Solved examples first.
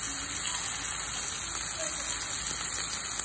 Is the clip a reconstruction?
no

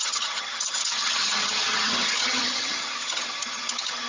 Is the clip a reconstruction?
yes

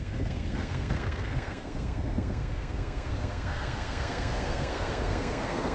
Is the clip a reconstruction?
yes